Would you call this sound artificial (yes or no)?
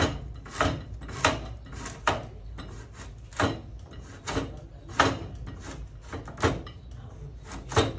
no